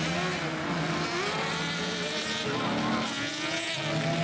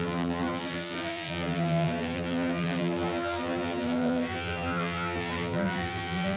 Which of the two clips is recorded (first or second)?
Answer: first